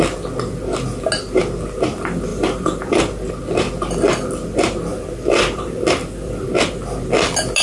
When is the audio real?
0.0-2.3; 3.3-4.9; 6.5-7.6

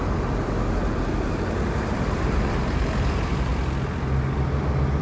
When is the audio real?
3.5-5.0

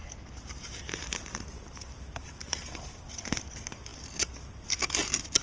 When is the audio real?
3.2-5.4

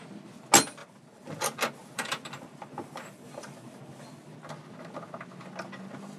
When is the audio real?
0.0-0.8; 1.4-1.8; 3.8-6.2